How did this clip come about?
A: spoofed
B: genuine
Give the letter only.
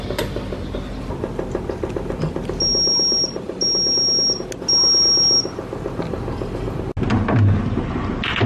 B